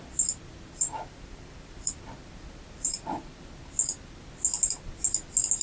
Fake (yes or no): no